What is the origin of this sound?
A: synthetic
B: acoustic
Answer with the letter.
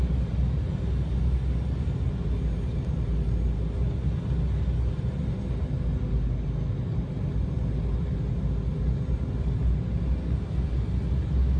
B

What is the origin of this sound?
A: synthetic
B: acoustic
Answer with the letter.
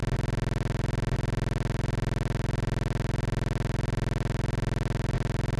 B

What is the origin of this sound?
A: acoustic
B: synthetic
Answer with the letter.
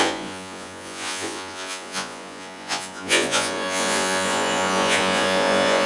B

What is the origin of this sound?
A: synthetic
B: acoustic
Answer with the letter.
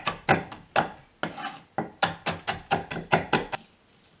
B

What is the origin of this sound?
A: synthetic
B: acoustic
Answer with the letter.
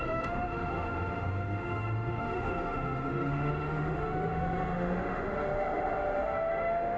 A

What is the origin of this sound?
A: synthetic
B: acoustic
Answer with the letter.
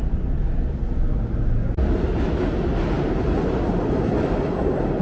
B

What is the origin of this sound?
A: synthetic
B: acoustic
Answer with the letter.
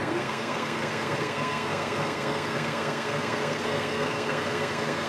A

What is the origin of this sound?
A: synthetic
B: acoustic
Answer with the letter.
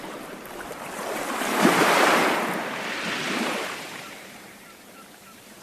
A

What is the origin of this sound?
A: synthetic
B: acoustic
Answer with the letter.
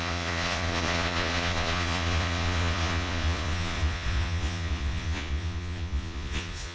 A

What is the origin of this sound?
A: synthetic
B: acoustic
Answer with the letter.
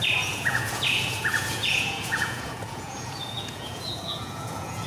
A